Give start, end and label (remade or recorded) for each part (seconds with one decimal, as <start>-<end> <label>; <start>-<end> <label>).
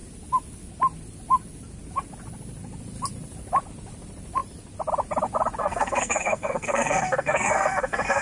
0.0-5.6 recorded; 5.6-8.2 remade